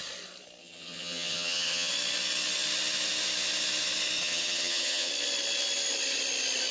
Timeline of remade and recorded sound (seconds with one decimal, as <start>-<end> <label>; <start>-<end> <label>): 0.0-0.6 recorded; 0.6-1.9 remade; 1.9-4.2 recorded; 4.2-5.1 remade; 5.1-6.7 recorded

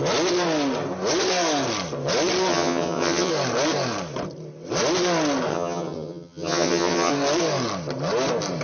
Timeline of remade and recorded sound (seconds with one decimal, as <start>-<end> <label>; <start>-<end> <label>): 0.0-2.5 recorded; 2.5-3.3 remade; 3.3-5.5 recorded; 5.5-7.1 remade; 7.1-8.6 recorded